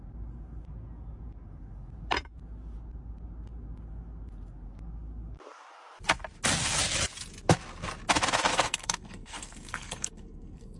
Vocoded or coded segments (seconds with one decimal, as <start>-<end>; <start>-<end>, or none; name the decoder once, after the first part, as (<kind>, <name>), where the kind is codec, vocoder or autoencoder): 8.5-10.8 (codec, SNAC)